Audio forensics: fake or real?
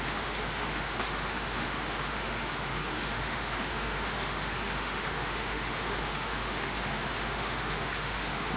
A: fake